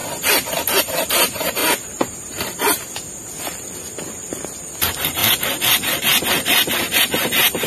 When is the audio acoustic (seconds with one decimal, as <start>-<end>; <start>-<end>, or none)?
0.0-0.8; 1.6-4.5; 5.2-7.0